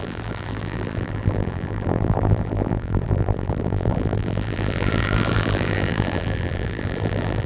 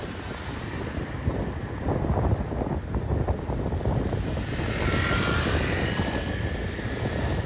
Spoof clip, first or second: first